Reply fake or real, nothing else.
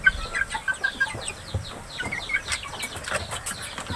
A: real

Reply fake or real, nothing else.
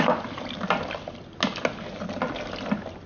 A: real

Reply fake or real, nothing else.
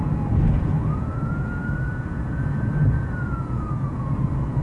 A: fake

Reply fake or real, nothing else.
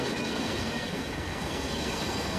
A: fake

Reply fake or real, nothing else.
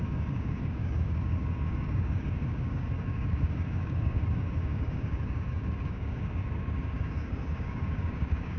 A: fake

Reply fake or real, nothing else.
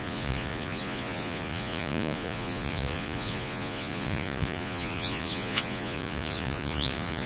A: fake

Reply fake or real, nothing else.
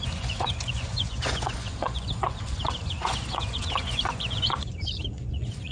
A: fake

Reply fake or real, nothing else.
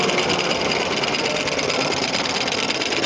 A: real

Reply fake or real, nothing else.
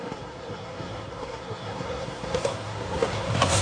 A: fake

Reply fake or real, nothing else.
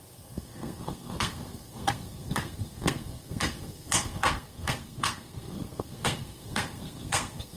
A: fake